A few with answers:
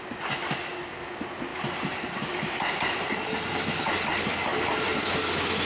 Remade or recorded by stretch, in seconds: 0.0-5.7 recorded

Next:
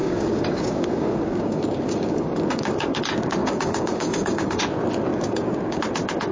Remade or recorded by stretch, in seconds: 0.0-3.0 remade; 3.0-3.4 recorded; 3.4-4.6 remade; 4.6-5.1 recorded; 5.1-5.8 remade; 5.8-6.3 recorded

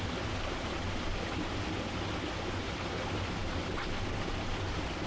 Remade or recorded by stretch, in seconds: 0.0-5.1 recorded